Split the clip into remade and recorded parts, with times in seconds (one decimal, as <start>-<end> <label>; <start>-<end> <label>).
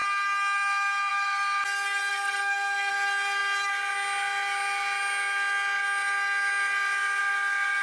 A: 0.0-2.1 recorded; 2.1-2.9 remade; 2.9-7.8 recorded